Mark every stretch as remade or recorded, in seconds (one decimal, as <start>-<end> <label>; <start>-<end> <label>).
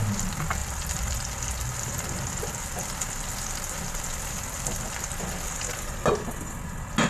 0.0-0.6 recorded; 0.6-1.5 remade; 1.5-7.1 recorded